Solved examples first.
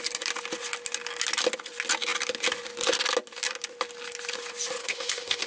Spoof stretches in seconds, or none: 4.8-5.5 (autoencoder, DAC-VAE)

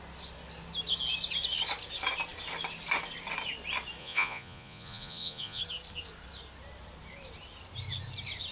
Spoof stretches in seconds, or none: 4.0-5.6 (vocoder, Vocos)

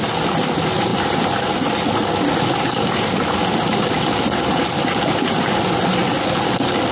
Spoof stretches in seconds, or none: none

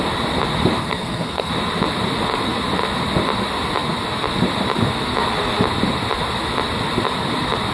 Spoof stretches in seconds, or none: 0.8-1.5 (codec, SNAC)

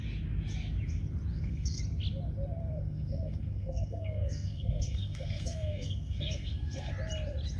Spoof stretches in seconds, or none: 1.3-1.8 (codec, SNAC); 2.6-6.9

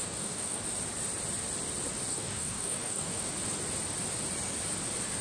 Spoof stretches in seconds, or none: 0.0-0.6 (codec, DAC); 2.1-3.3

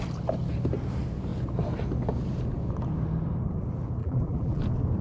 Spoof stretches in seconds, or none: 4.0-4.6 (vocoder, BigVGAN v2)